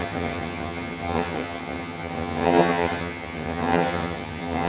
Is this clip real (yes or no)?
no